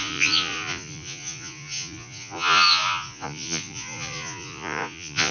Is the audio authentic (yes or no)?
no